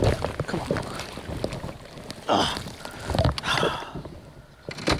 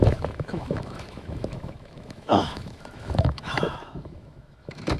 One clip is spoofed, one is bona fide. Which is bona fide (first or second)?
first